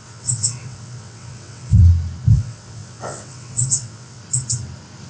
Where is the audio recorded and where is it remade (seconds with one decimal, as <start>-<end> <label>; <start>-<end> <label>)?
0.0-1.8 remade; 1.8-2.3 recorded; 2.3-4.2 remade; 4.2-5.1 recorded